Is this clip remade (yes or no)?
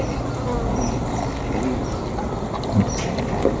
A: no